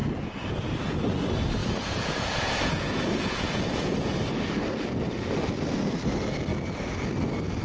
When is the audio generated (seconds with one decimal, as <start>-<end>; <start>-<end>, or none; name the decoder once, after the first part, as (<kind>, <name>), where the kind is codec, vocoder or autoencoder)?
1.6-4.1 (vocoder, Vocos)

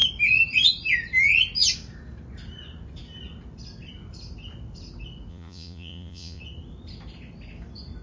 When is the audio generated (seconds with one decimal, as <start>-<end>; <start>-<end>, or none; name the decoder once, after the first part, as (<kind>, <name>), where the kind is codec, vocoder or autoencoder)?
5.3-6.4 (vocoder, Vocos)